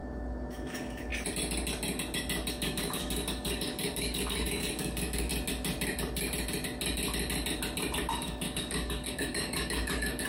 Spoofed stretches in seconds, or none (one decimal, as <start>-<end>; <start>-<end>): 0.5-1.1; 2.5-5.3; 8.1-10.3